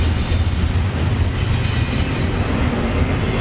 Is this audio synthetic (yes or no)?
no